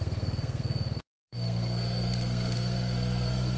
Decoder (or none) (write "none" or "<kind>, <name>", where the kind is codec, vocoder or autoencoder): codec, SNAC